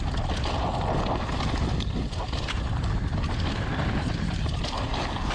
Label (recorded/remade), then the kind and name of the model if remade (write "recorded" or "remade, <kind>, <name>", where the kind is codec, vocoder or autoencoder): recorded